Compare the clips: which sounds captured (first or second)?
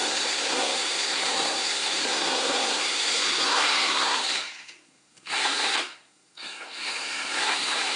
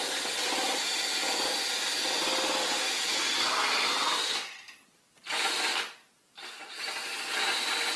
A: second